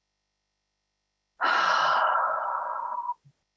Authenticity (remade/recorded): recorded